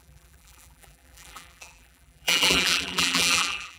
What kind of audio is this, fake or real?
fake